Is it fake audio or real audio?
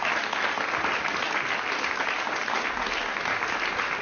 real